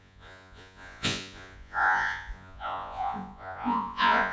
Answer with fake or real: fake